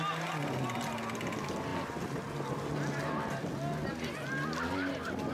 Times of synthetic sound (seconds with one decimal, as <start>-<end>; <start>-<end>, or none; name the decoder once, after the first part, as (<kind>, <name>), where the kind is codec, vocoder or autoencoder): none